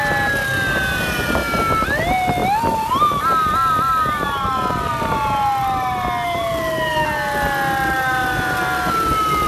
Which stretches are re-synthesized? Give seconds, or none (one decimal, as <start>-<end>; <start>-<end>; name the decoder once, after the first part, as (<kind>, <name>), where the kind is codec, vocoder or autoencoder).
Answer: none